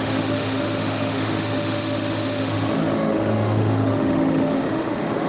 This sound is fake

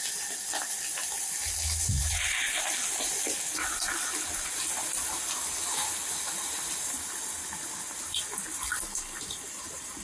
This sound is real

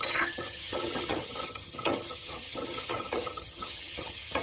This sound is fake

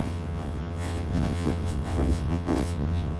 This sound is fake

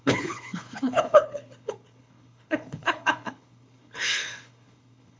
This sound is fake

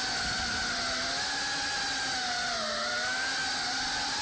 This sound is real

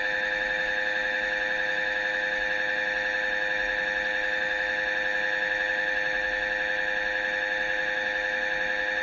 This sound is fake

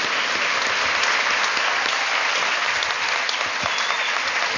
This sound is real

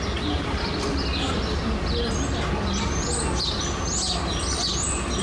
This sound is real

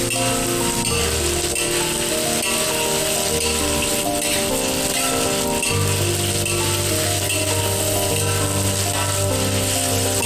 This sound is real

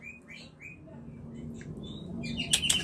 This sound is real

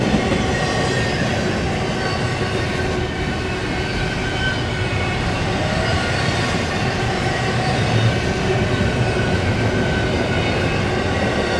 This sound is real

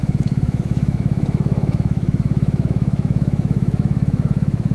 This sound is fake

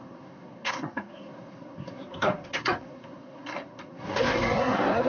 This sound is fake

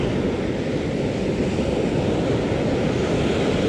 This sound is real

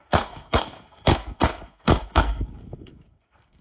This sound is fake